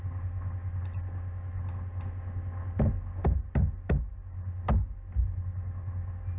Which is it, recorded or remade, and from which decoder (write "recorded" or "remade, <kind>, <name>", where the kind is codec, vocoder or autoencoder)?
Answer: recorded